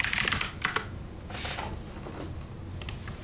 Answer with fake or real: real